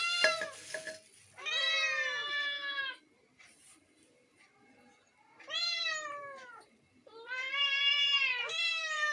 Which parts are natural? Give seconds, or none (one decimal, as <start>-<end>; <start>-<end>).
0.0-1.6